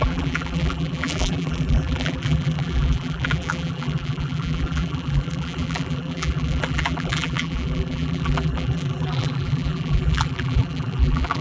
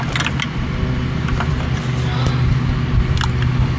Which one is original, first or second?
second